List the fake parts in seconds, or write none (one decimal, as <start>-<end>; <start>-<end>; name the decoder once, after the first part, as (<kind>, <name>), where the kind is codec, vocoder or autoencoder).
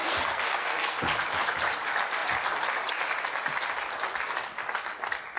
0.0-1.0 (codec, SNAC)